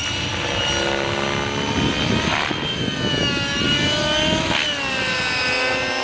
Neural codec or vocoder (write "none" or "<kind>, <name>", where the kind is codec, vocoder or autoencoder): none